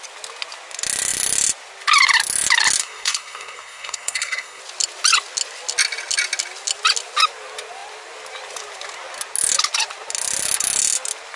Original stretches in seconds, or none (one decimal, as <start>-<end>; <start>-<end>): 0.0-2.8; 4.6-11.4